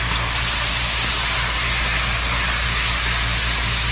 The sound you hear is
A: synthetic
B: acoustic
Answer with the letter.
B